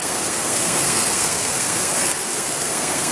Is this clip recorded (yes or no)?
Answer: no